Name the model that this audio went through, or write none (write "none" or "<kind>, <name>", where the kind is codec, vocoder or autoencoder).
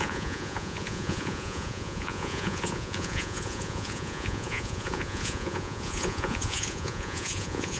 vocoder, Vocos